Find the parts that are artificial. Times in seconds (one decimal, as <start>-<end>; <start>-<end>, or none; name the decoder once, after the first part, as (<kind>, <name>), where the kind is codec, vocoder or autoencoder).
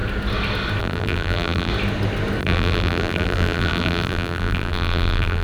0.8-1.7 (vocoder, BigVGAN v2); 2.4-5.4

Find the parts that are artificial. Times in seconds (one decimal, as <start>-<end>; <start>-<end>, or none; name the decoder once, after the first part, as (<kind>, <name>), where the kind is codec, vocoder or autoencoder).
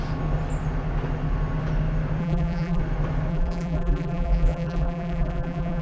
2.2-2.8 (vocoder, BigVGAN v2); 3.3-5.8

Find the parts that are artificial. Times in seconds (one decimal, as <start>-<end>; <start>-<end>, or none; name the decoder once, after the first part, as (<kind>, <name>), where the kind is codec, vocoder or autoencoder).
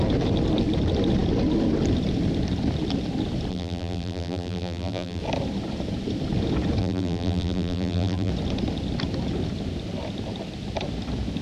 3.5-5.2 (vocoder, BigVGAN v2); 6.8-8.3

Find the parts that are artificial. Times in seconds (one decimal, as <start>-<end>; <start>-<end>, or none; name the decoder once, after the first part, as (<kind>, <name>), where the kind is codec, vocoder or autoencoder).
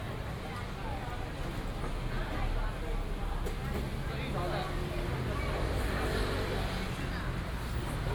none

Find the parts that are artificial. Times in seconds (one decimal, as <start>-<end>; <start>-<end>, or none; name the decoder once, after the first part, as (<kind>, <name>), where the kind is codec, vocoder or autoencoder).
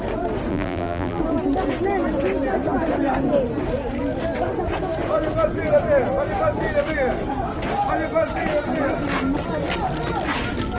0.5-1.2 (vocoder, BigVGAN v2)